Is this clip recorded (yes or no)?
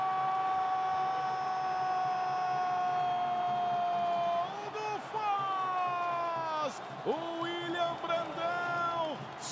yes